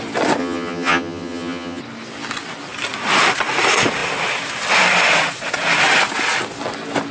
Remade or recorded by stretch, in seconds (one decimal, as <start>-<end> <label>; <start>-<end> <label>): 0.0-0.4 recorded; 0.4-1.8 remade; 1.8-7.1 recorded